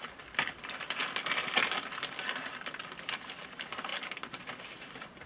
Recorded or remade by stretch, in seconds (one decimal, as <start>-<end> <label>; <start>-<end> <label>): 0.0-5.3 recorded

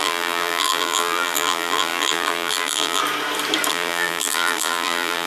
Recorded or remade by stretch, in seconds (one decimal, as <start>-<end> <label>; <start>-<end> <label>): 0.0-3.0 remade; 3.0-3.7 recorded; 3.7-5.3 remade

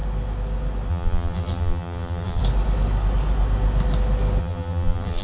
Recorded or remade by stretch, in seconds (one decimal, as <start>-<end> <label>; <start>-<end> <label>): 0.0-0.9 recorded; 0.9-2.4 remade; 2.4-4.4 recorded; 4.4-5.2 remade

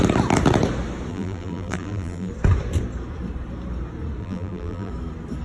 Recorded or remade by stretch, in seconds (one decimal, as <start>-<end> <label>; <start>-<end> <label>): 0.0-1.1 recorded; 1.1-2.3 remade; 2.3-4.2 recorded; 4.2-4.9 remade; 4.9-5.4 recorded

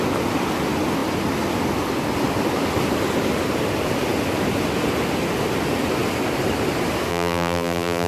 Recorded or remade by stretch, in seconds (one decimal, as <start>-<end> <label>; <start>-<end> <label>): 0.0-7.1 recorded; 7.1-8.1 remade